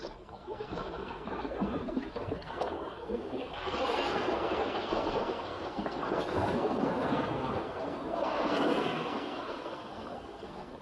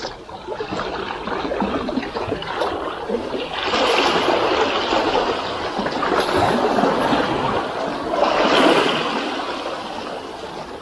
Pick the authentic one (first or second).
second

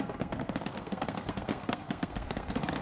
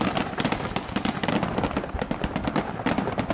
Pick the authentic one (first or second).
second